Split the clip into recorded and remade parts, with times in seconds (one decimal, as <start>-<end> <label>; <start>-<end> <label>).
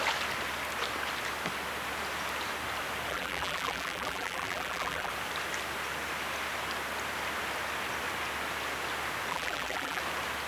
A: 0.0-3.1 recorded; 3.1-5.1 remade; 5.1-9.3 recorded; 9.3-10.0 remade; 10.0-10.5 recorded